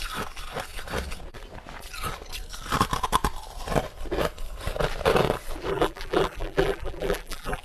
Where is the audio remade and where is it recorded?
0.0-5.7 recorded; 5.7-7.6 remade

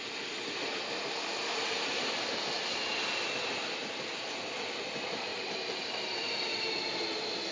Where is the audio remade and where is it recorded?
0.0-5.3 recorded; 5.3-7.5 remade

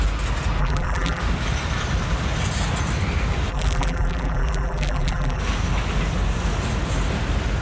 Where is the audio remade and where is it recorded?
0.0-0.6 recorded; 0.6-1.2 remade; 1.2-3.5 recorded; 3.5-5.4 remade; 5.4-7.6 recorded

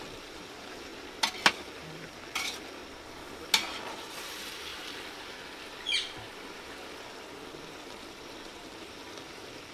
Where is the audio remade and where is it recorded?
0.0-0.9 remade; 0.9-1.5 recorded; 1.5-2.8 remade; 2.8-3.8 recorded; 3.8-4.7 remade; 4.7-8.1 recorded; 8.1-9.7 remade

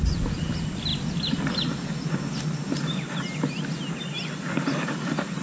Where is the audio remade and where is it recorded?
0.0-5.4 recorded

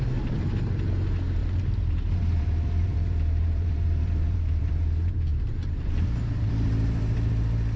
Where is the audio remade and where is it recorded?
0.0-1.4 recorded; 1.4-4.7 remade; 4.7-5.3 recorded; 5.3-7.3 remade; 7.3-7.8 recorded